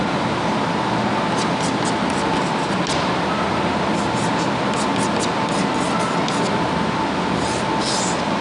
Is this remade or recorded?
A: recorded